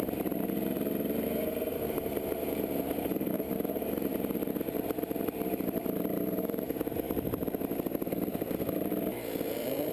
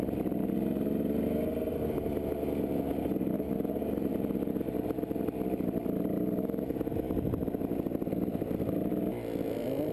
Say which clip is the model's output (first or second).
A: first